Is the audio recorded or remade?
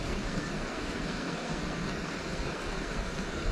remade